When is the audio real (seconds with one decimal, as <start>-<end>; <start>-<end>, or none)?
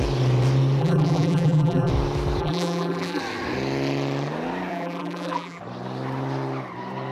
0.0-0.8; 1.9-2.4; 3.2-4.7; 5.6-7.1